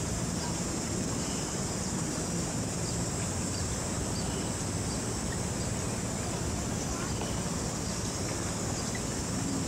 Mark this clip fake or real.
real